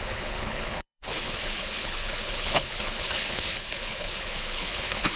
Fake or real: fake